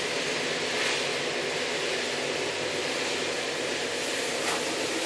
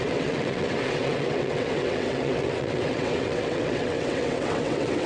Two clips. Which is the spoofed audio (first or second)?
second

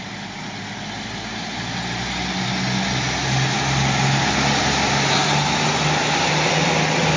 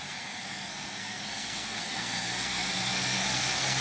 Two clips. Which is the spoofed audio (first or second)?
second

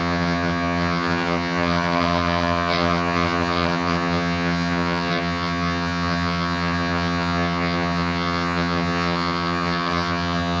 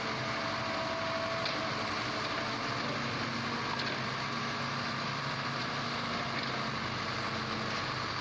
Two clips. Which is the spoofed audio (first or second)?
first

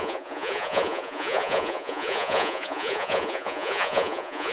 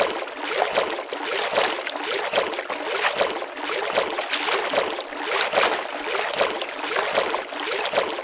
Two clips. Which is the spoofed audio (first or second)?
first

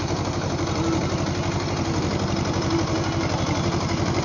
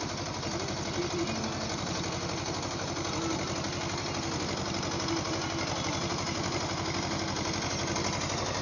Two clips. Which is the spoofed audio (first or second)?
first